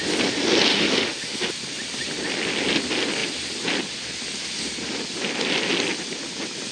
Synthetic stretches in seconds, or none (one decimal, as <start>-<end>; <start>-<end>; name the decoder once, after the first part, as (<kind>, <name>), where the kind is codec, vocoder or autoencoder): 0.7-1.5 (autoencoder, DAC-VAE)